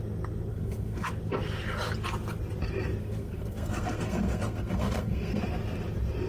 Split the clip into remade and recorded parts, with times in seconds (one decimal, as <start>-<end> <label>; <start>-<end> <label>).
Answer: 0.0-0.5 recorded; 0.5-1.1 remade; 1.1-3.0 recorded; 3.0-5.4 remade; 5.4-6.3 recorded